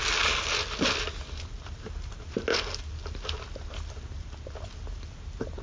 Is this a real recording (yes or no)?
yes